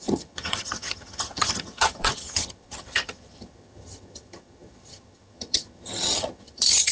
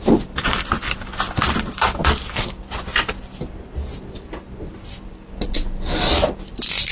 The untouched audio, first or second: second